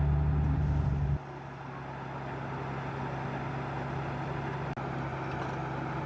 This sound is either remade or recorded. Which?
recorded